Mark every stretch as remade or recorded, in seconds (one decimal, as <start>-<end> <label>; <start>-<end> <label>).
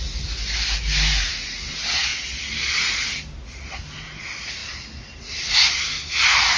0.0-6.6 recorded